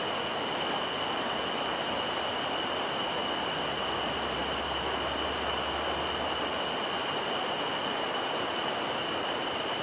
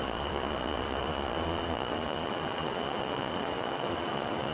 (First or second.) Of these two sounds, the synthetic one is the second